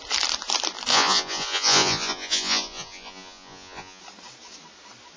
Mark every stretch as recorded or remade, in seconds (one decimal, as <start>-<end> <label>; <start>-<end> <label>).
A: 0.0-0.9 recorded; 0.9-4.0 remade; 4.0-5.2 recorded